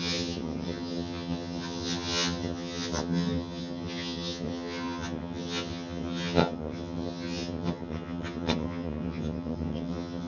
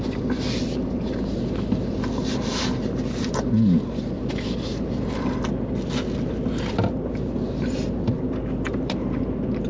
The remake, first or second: first